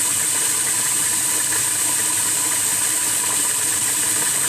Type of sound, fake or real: real